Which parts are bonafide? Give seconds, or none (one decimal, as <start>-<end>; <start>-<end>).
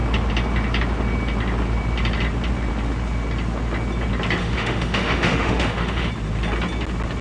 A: 0.0-4.4; 6.1-7.2